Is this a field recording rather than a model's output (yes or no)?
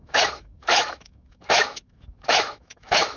no